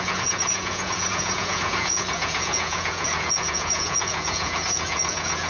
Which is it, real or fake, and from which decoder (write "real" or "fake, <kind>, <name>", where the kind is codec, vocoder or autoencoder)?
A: fake, vocoder, Vocos